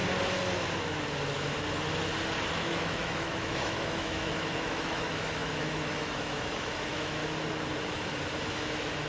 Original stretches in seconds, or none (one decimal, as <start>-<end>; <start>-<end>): 0.0-2.5; 7.2-8.4